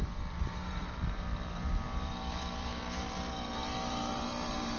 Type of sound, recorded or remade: remade